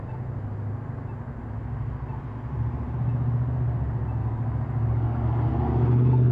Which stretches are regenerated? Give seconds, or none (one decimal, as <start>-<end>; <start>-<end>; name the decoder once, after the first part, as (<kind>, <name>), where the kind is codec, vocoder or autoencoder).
4.2-5.5 (codec, DAC)